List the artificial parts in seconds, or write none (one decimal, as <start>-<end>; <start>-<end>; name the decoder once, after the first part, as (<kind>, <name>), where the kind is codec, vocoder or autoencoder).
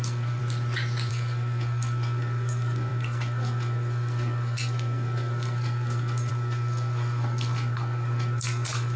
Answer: 0.0-0.4 (codec, SNAC); 1.1-9.0